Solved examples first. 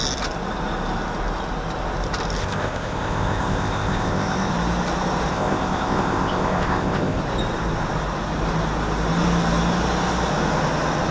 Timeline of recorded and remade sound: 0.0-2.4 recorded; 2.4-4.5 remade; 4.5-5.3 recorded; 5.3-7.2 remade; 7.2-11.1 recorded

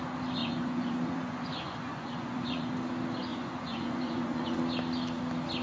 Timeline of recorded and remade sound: 0.0-0.4 recorded; 0.4-2.7 remade; 2.7-3.3 recorded; 3.3-4.6 remade; 4.6-5.6 recorded

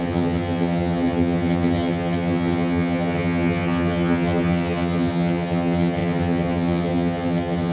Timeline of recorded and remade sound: 0.0-7.7 remade